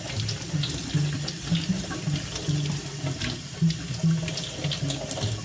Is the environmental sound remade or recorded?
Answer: recorded